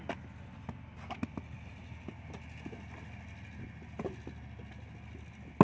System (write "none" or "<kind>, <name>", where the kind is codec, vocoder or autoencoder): none